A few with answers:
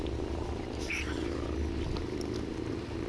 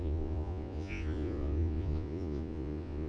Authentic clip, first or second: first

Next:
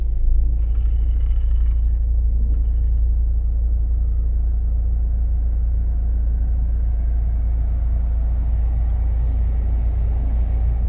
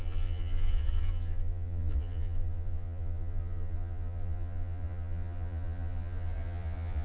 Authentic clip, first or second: first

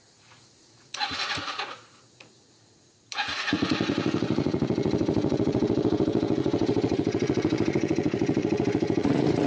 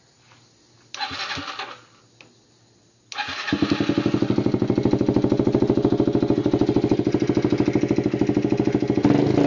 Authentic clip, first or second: second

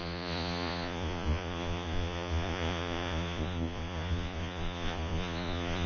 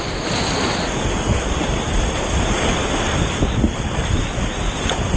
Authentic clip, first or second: second